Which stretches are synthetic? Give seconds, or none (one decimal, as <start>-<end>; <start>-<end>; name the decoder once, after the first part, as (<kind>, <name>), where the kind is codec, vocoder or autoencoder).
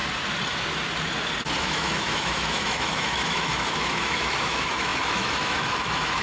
1.6-6.2 (autoencoder, DAC-VAE)